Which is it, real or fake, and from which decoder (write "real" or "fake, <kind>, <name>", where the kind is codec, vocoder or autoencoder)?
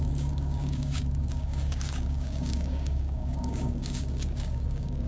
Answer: fake, codec, DAC